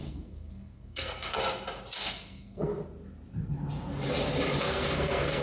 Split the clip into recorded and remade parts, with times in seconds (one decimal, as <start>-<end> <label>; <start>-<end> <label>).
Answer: 0.0-1.4 remade; 1.4-2.0 recorded; 2.0-2.7 remade; 2.7-4.6 recorded; 4.6-5.4 remade